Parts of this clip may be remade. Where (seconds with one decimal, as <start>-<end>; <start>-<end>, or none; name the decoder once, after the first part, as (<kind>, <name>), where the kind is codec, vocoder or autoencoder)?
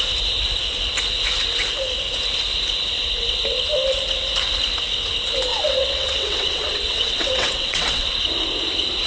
5.5-8.1 (vocoder, WaveNeXt)